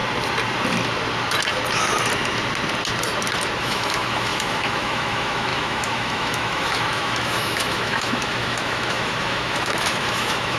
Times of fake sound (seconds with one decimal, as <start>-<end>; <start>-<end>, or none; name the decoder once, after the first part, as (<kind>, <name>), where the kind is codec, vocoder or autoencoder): 3.6-10.6 (autoencoder, DAC-VAE)